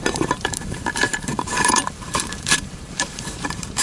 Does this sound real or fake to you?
fake